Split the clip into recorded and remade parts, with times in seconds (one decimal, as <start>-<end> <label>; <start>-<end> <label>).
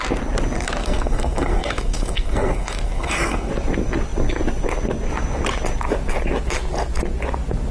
0.0-0.8 recorded; 0.8-3.5 remade; 3.5-7.7 recorded